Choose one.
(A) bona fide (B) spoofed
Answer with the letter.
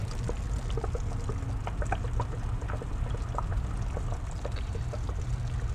A